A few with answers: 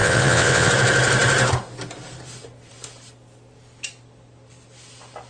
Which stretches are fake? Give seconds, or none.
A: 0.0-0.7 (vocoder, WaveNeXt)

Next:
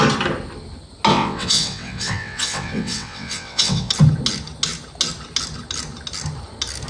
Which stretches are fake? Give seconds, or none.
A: 1.1-3.9 (vocoder, WaveNeXt)

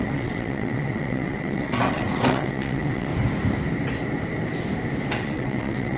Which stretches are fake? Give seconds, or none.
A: 0.0-3.1 (vocoder, WaveNeXt); 5.1-6.0

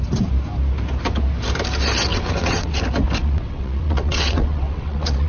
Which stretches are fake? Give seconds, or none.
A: 2.1-2.8 (vocoder, WaveNeXt); 3.2-5.3

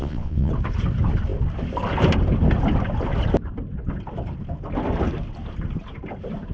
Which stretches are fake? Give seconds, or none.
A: 0.0-0.5 (vocoder, WaveNeXt)

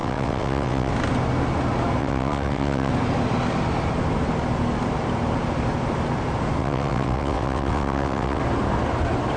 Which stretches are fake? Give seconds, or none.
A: 0.0-0.9 (vocoder, WaveNeXt); 2.0-2.9; 6.6-8.4

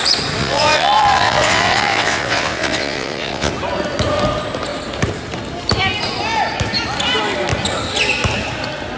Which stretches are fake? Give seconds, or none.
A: 0.4-3.5 (vocoder, WaveNeXt)

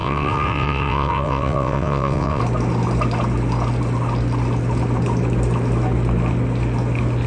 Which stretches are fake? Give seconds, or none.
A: 0.0-2.4 (vocoder, WaveNeXt)